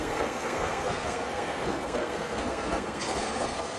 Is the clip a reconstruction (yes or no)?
yes